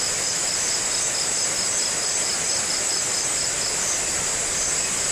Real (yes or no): no